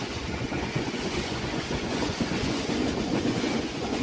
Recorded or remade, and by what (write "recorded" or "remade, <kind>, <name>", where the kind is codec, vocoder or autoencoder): remade, vocoder, Vocos